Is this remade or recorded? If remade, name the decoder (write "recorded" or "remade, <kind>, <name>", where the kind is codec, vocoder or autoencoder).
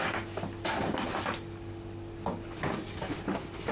recorded